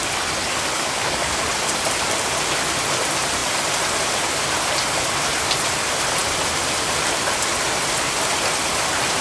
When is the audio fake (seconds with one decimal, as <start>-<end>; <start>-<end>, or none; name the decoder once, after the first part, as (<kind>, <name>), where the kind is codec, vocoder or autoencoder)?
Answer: 0.5-1.4 (codec, DAC)